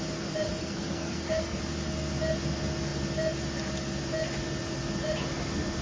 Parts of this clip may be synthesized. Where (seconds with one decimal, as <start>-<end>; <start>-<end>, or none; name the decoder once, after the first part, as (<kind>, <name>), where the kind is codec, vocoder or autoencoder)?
0.6-1.6 (codec, SNAC)